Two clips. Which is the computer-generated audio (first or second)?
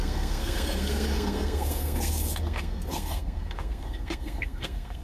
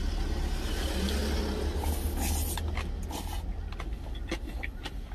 first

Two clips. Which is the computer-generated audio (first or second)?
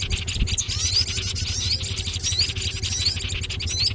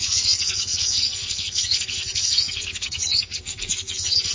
second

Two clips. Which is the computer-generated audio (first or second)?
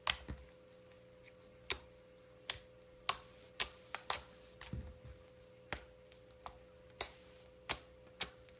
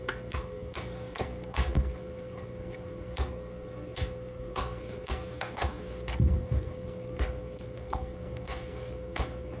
second